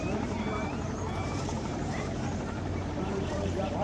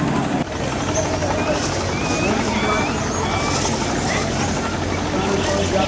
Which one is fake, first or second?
first